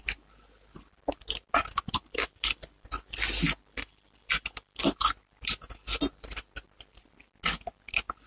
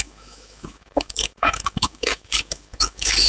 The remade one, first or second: second